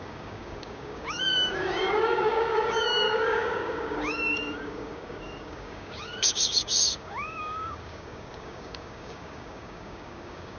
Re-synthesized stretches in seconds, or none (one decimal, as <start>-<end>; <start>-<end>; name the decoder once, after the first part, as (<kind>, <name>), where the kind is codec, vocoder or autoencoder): 0.0-10.6 (codec, DAC)